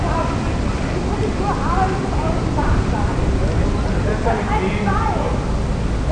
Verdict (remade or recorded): recorded